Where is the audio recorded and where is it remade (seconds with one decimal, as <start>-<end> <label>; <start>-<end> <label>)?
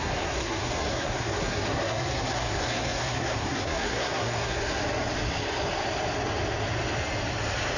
0.0-4.8 remade; 4.8-7.8 recorded